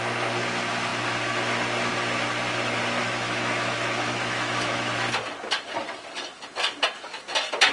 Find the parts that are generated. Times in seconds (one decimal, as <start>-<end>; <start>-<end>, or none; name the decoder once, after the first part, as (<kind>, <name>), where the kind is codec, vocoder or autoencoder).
3.0-4.9 (autoencoder, DAC-VAE)